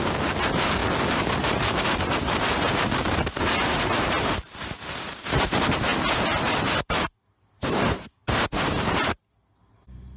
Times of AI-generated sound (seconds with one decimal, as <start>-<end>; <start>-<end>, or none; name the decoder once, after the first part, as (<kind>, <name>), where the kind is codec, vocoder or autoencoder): 0.0-0.8 (vocoder, BigVGAN v2); 1.3-5.9; 6.9-10.2